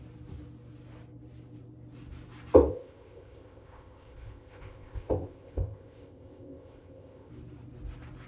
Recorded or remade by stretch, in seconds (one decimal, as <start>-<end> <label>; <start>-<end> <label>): 0.0-2.7 recorded; 2.7-7.3 remade; 7.3-8.3 recorded